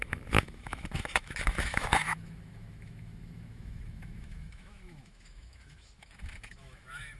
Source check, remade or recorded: remade